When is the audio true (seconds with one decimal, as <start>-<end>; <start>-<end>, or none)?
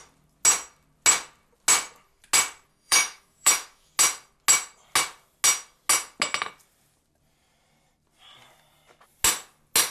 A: 0.0-2.7; 3.9-9.9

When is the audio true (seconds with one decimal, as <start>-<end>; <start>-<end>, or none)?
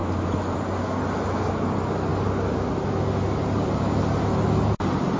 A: 0.0-5.2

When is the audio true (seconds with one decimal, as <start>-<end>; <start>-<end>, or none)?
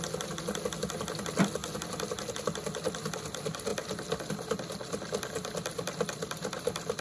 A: 0.0-7.0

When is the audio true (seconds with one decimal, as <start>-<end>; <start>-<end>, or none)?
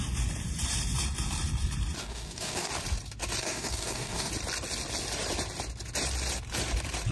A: 0.0-2.0; 2.7-3.4; 4.3-7.1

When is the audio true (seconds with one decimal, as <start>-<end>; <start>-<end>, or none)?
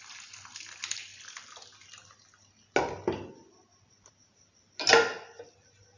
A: 0.0-6.0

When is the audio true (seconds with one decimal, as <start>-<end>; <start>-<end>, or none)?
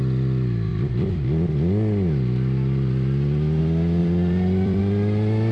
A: 0.0-0.7; 3.6-4.0; 4.8-5.5